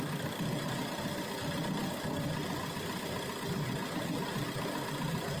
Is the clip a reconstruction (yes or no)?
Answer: yes